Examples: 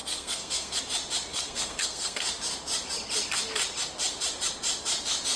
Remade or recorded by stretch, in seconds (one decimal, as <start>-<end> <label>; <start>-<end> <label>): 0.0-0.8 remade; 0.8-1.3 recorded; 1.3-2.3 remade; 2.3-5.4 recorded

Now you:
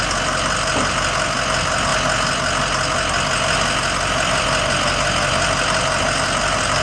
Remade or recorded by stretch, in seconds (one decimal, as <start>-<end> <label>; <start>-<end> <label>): 0.0-6.8 recorded

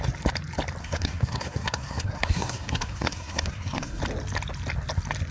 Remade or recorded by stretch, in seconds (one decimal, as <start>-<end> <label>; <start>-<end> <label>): 0.0-0.8 recorded; 0.8-4.0 remade; 4.0-5.3 recorded

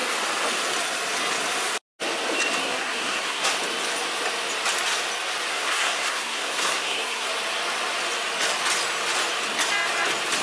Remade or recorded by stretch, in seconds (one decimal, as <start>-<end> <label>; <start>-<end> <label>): 0.0-2.6 recorded; 2.6-3.5 remade; 3.5-5.5 recorded; 5.5-7.3 remade; 7.3-10.4 recorded

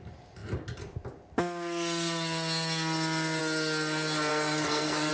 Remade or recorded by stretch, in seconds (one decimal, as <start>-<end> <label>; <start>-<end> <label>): 0.0-4.3 recorded; 4.3-5.1 remade